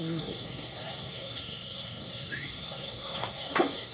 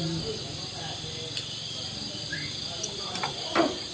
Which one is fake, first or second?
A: first